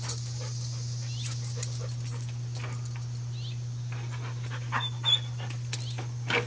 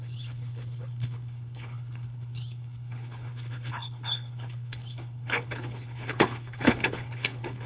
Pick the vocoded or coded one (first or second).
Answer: second